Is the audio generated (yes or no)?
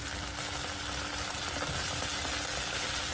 no